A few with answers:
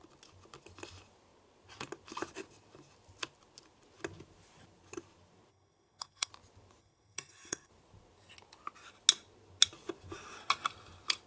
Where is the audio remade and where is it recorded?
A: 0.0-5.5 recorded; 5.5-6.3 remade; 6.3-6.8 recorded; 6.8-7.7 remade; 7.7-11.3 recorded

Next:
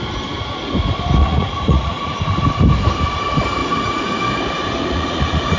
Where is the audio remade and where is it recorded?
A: 0.0-1.2 recorded; 1.2-2.2 remade; 2.2-3.6 recorded; 3.6-4.2 remade; 4.2-4.8 recorded; 4.8-5.6 remade

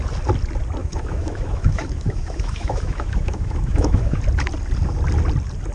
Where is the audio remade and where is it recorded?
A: 0.0-0.8 recorded; 0.8-4.2 remade; 4.2-5.7 recorded